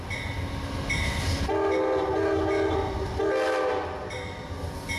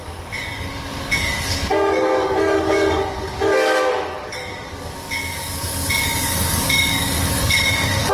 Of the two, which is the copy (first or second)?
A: second